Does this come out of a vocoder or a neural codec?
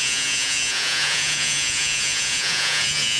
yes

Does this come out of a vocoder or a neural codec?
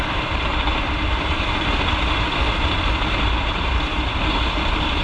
yes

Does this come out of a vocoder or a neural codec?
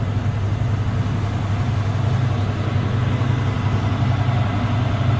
no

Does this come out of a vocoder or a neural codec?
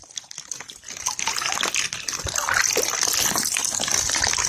no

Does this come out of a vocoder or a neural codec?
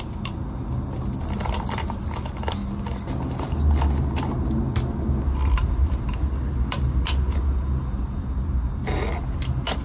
no